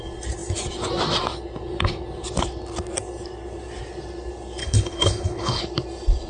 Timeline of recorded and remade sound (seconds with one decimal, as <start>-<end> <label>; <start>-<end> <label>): 0.0-4.6 recorded; 4.6-5.6 remade; 5.6-6.3 recorded